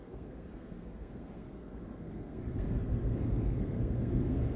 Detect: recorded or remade remade